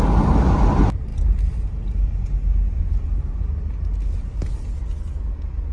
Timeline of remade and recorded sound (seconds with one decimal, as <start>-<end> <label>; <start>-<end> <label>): 0.0-5.7 recorded